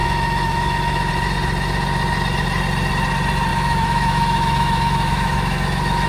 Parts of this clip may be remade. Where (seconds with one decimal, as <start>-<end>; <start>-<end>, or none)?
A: 0.0-1.1; 3.5-6.1